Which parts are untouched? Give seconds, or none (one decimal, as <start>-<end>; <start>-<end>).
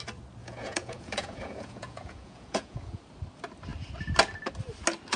0.0-0.4; 3.0-5.2